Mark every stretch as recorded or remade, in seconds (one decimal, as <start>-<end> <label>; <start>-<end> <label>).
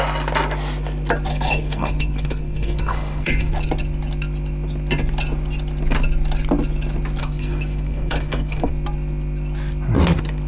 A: 0.0-1.3 recorded; 1.3-3.5 remade; 3.5-7.2 recorded; 7.2-8.7 remade; 8.7-10.5 recorded